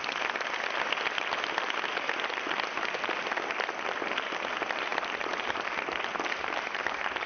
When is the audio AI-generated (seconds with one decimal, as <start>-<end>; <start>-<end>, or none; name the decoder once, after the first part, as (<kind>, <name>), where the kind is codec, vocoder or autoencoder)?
none